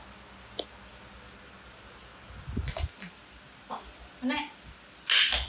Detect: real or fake real